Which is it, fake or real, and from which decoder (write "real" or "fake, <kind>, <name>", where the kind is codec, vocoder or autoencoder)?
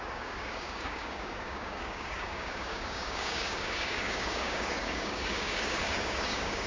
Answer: fake, codec, DAC